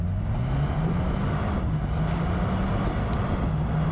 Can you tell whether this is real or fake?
real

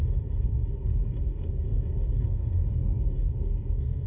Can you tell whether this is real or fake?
fake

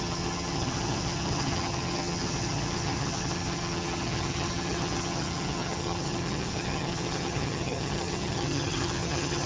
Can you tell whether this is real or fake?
fake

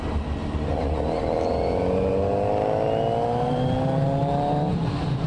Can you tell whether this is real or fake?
real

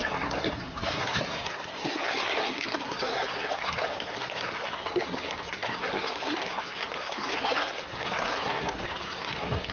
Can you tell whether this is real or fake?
fake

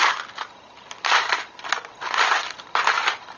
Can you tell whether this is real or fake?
real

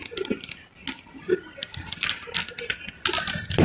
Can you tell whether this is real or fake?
real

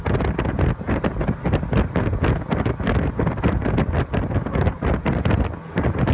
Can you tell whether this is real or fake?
real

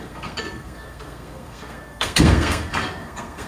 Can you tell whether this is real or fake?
fake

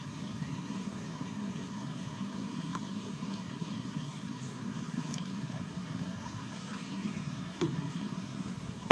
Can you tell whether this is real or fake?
fake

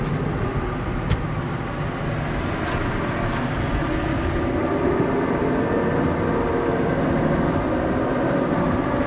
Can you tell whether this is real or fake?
real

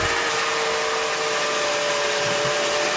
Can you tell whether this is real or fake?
real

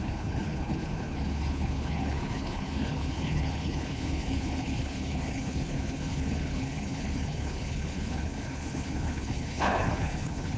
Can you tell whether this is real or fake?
fake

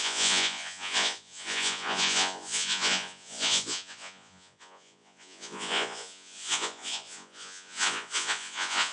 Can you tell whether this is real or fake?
fake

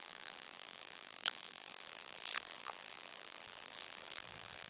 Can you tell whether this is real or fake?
fake